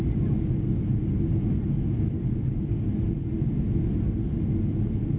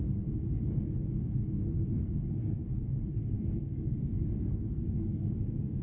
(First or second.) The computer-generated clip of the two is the second